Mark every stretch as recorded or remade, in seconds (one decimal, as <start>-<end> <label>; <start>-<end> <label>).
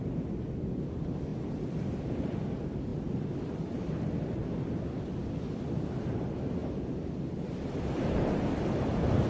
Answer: 0.0-2.9 recorded; 2.9-6.1 remade; 6.1-6.6 recorded; 6.6-8.9 remade; 8.9-9.3 recorded